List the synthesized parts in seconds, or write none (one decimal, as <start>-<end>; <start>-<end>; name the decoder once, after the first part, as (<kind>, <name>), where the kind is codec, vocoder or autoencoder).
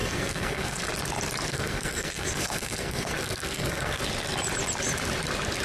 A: 0.0-0.8 (codec, SNAC); 1.5-4.0